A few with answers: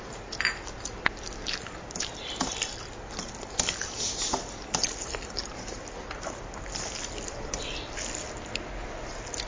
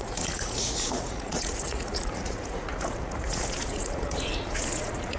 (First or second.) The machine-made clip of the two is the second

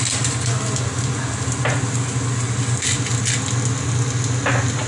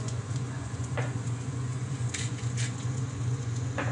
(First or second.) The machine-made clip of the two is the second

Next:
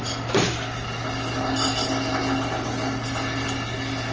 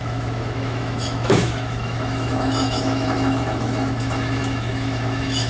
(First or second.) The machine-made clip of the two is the second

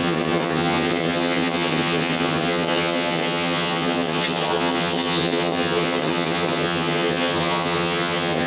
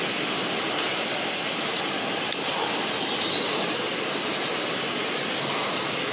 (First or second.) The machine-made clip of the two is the first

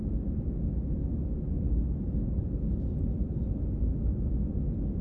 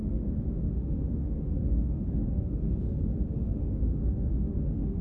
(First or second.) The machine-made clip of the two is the second